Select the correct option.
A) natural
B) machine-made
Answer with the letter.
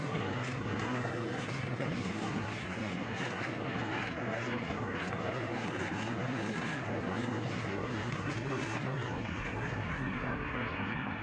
B